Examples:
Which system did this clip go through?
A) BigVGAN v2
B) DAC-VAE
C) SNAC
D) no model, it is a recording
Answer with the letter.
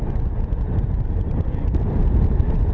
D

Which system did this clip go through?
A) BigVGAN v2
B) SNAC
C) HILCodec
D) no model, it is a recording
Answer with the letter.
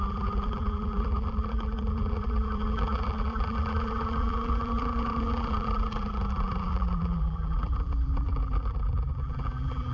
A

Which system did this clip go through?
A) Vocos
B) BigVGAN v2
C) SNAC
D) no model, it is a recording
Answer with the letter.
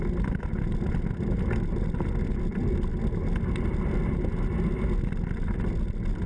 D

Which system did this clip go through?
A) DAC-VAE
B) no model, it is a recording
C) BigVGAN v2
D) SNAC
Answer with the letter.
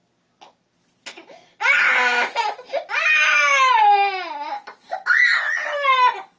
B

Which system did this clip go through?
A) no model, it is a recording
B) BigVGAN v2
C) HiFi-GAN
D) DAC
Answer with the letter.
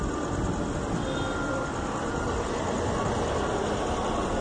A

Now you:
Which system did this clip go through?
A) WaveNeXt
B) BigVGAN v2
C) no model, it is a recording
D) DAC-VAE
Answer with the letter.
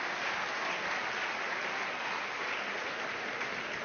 C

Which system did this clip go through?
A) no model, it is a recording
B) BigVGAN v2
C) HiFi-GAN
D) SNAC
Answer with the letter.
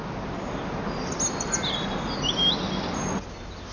A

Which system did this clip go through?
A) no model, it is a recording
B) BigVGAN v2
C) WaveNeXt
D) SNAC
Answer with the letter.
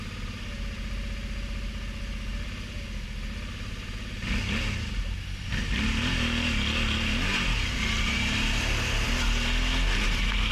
A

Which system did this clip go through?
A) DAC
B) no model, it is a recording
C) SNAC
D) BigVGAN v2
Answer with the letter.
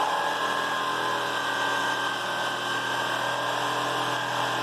B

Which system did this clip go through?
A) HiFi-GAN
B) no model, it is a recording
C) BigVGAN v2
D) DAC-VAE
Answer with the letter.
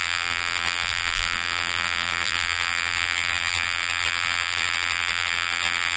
C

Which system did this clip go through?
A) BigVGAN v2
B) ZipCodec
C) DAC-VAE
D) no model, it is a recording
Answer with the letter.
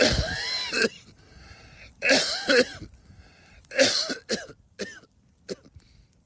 A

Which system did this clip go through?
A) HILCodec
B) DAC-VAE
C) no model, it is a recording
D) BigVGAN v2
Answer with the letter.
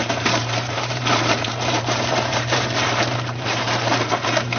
D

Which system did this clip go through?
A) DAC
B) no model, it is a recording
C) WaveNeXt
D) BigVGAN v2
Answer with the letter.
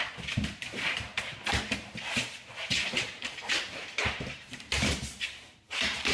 D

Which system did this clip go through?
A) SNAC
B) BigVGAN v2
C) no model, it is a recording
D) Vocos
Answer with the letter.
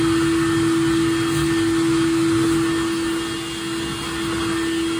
C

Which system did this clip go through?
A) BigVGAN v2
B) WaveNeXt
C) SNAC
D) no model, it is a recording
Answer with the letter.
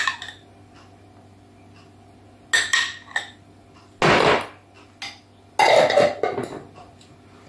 D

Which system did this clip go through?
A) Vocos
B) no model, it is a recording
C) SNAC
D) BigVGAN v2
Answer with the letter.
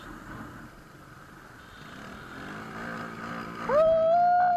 B